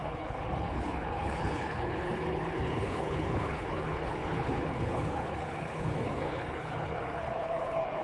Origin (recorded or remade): remade